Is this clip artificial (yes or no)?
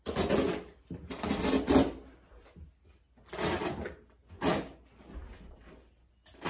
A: no